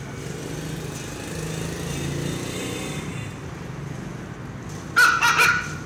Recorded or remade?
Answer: recorded